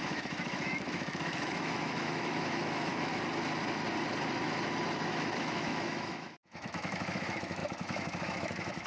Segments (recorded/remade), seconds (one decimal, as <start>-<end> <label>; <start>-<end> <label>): 0.0-3.1 remade; 3.1-5.1 recorded; 5.1-8.9 remade